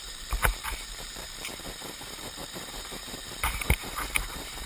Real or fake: fake